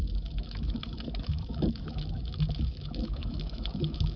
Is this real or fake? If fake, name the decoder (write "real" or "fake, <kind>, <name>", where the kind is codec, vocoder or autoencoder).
fake, autoencoder, DAC-VAE